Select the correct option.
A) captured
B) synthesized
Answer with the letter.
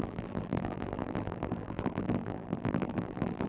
B